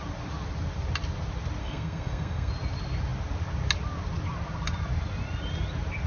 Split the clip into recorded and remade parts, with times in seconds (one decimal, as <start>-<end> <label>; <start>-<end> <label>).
0.0-1.6 recorded; 1.6-2.5 remade; 2.5-6.1 recorded